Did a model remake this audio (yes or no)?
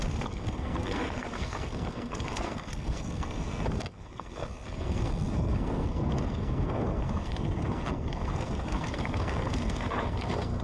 yes